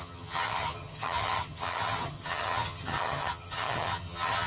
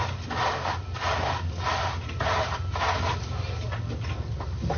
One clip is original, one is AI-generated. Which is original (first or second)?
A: second